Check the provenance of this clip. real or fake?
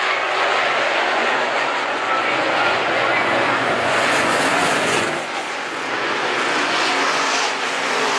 fake